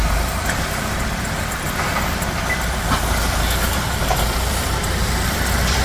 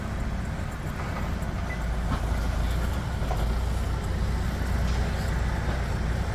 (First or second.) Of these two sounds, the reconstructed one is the first